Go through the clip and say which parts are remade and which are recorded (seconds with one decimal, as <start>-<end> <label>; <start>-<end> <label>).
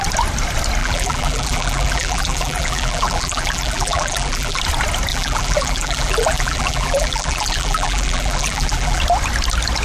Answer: 0.0-0.8 recorded; 0.8-4.6 remade; 4.6-5.1 recorded; 5.1-9.0 remade; 9.0-9.8 recorded